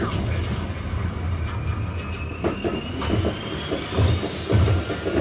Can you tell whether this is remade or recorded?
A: recorded